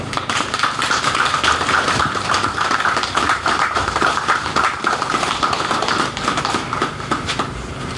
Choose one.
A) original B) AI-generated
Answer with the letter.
B